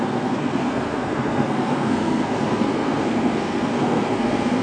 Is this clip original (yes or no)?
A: no